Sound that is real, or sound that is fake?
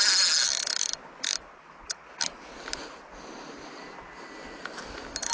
real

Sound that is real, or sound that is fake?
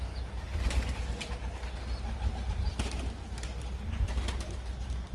real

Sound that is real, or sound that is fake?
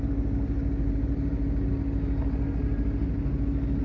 real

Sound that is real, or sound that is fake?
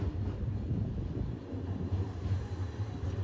real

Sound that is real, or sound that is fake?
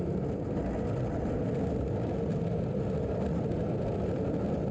real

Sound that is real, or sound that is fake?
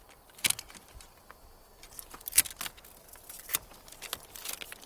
real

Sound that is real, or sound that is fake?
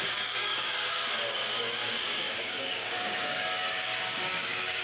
fake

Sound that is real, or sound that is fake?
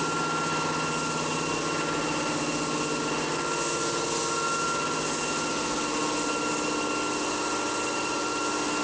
real